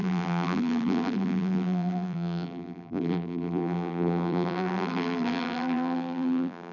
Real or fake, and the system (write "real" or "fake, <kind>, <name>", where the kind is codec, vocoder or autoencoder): fake, vocoder, BigVGAN v2